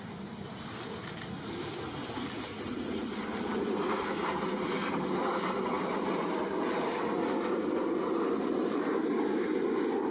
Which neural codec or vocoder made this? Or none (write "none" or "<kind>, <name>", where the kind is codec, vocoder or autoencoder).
none